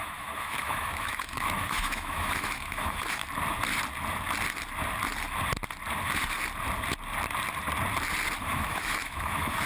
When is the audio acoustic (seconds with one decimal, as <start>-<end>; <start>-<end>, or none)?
3.2-8.4